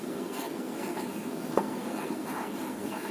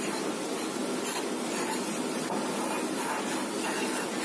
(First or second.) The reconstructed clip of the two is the first